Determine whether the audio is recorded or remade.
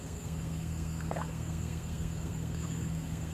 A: remade